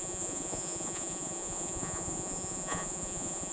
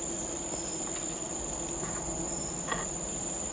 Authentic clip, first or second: second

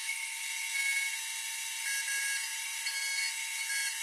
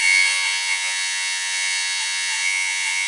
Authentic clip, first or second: first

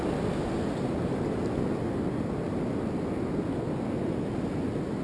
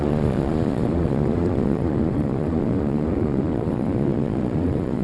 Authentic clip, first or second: first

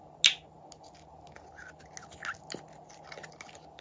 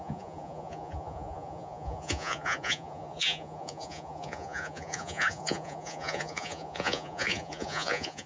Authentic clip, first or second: first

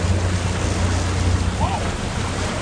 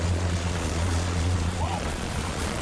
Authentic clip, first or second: first